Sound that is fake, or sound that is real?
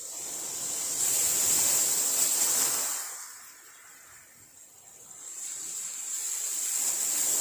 real